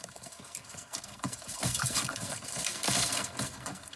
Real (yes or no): no